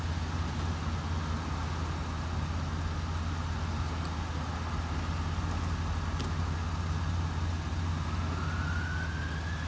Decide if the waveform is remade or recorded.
recorded